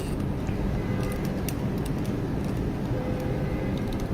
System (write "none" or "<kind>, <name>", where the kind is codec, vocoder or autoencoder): none